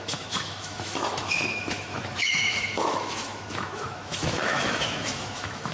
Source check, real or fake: fake